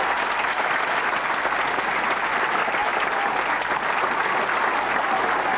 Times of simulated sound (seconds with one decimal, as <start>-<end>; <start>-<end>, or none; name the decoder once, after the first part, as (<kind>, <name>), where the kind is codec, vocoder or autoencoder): none